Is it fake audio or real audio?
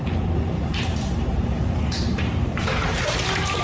fake